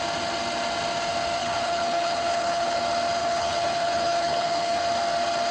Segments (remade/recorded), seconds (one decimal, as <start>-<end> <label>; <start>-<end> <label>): 0.0-1.4 recorded; 1.4-2.8 remade; 2.8-3.2 recorded; 3.2-4.8 remade; 4.8-5.5 recorded